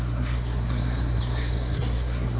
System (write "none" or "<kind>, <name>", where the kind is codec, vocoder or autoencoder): codec, SNAC